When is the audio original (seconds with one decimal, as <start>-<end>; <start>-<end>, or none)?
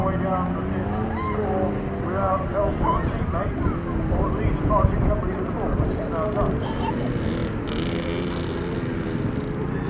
0.0-2.5; 3.0-9.9